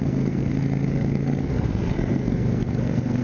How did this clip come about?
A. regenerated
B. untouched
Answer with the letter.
A